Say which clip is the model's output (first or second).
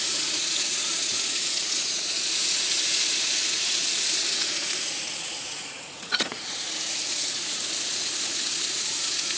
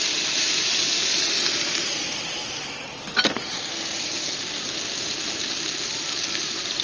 first